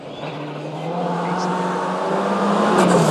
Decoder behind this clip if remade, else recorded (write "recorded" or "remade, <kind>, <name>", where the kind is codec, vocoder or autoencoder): recorded